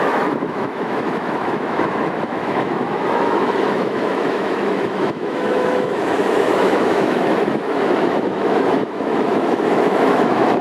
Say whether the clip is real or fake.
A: fake